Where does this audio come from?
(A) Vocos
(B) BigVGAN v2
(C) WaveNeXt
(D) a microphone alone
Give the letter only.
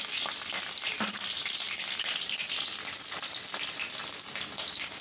D